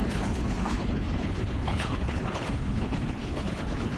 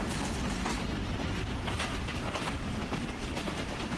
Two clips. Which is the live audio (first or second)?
second